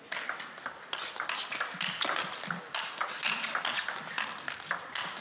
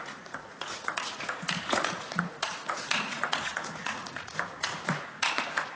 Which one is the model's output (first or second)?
second